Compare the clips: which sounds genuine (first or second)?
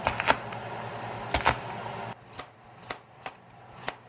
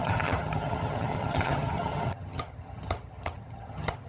first